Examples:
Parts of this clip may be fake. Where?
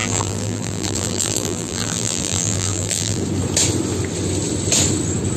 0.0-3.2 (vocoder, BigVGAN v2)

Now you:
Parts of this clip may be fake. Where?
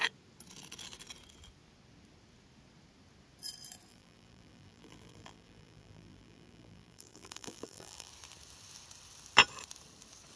3.9-8.1 (vocoder, BigVGAN v2)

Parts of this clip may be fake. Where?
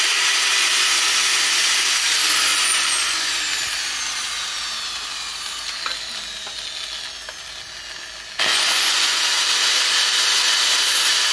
2.5-3.4 (vocoder, Vocos); 8.5-9.2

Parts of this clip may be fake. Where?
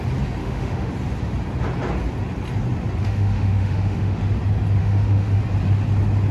0.4-0.9 (autoencoder, DAC-VAE); 3.0-4.2; 4.8-5.4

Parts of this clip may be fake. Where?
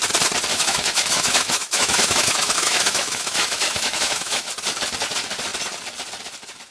0.5-4.5 (autoencoder, DAC-VAE)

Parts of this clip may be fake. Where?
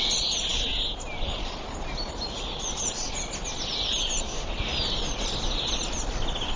none